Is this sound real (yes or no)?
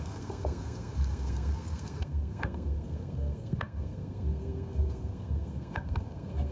no